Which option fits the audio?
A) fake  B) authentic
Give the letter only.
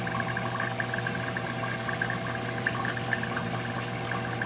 B